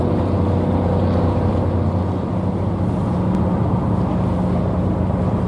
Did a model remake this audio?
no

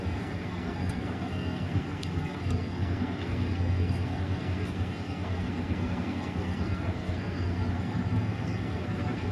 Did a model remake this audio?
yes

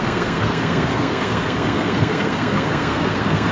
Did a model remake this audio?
yes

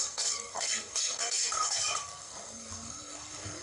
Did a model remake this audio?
yes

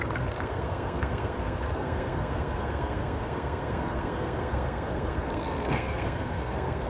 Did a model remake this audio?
yes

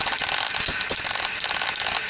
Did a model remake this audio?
no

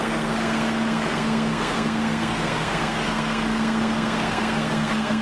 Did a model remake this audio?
yes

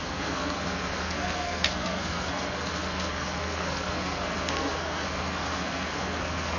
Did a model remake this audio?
yes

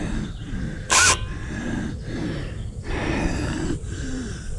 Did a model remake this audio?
no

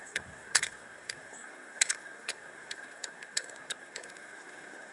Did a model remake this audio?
yes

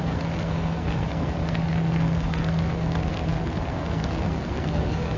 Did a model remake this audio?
yes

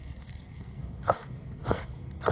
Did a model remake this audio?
yes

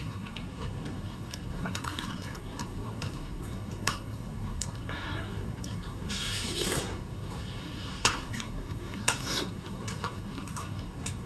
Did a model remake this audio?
yes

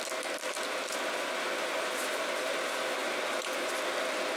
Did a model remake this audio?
no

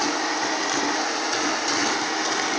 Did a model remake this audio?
no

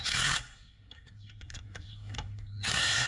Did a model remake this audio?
yes